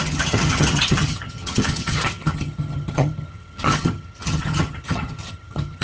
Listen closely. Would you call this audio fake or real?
fake